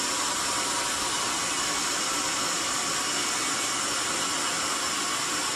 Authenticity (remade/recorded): recorded